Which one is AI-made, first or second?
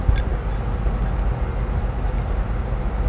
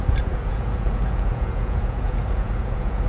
second